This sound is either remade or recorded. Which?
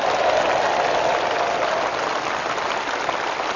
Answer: recorded